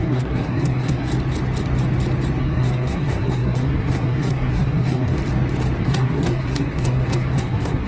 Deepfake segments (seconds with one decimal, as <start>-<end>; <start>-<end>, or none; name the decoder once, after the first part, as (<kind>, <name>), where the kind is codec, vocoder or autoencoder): 0.0-1.1 (codec, SNAC); 2.4-5.2; 5.8-7.9